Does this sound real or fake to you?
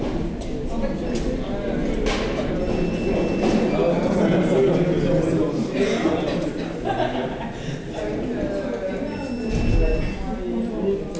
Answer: real